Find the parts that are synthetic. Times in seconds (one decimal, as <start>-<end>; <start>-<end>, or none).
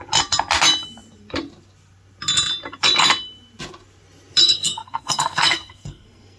4.4-6.4